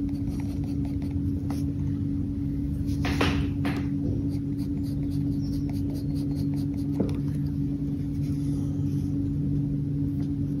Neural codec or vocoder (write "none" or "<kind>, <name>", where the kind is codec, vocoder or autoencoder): none